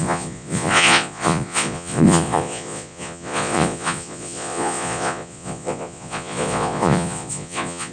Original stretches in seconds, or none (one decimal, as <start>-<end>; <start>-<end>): none